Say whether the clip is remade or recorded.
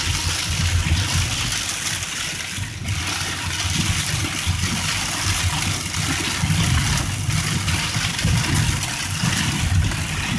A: recorded